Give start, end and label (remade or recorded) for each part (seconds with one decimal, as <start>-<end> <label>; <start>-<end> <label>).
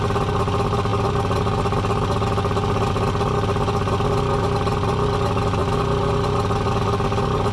0.0-7.5 recorded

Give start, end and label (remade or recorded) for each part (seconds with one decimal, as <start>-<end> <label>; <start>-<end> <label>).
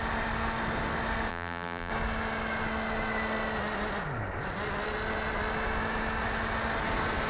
0.0-1.3 recorded; 1.3-1.9 remade; 1.9-7.3 recorded